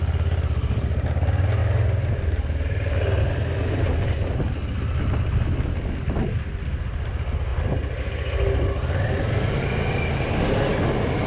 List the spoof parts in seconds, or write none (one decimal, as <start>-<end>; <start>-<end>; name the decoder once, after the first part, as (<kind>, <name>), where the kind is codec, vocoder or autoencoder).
none